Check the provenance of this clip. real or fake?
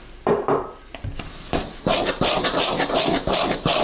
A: real